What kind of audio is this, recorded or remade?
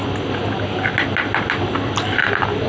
recorded